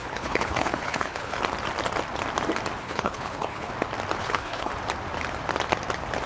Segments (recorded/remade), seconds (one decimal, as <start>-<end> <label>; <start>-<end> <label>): 0.0-1.4 remade; 1.4-2.8 recorded; 2.8-3.7 remade; 3.7-4.2 recorded; 4.2-4.7 remade; 4.7-6.3 recorded